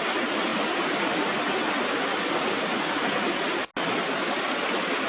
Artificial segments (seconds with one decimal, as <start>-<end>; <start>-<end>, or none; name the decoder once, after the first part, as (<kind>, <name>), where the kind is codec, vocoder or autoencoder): none